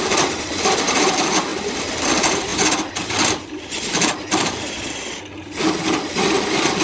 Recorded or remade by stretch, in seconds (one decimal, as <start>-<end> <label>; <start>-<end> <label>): 0.0-6.8 recorded